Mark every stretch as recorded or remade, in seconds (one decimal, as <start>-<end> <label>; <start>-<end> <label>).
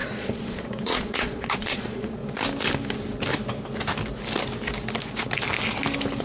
0.0-2.2 remade; 2.2-6.2 recorded